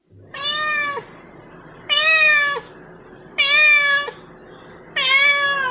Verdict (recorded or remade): recorded